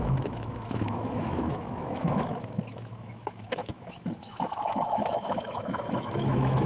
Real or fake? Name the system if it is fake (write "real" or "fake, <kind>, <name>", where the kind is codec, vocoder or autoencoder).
fake, autoencoder, DAC-VAE